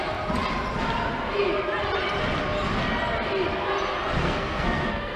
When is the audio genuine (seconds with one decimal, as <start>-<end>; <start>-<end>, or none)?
0.0-4.2